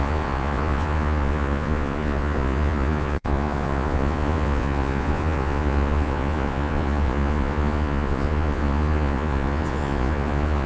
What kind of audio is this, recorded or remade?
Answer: remade